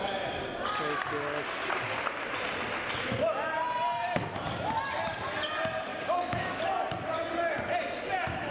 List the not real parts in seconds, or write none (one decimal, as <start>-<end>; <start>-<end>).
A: 5.9-6.6

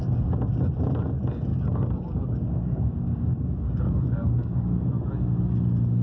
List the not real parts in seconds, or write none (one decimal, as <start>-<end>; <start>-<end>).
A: 1.5-5.1

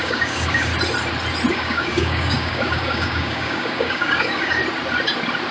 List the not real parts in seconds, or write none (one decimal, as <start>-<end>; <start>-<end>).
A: 0.0-0.7; 1.5-4.6